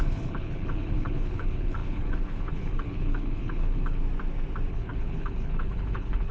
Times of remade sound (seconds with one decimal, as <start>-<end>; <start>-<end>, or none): 0.0-4.0; 4.7-6.3